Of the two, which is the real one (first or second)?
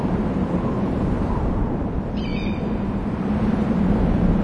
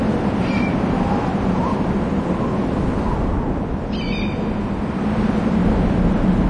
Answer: second